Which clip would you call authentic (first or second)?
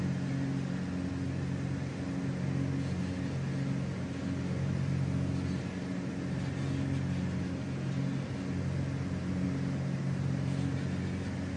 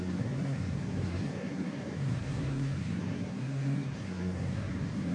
first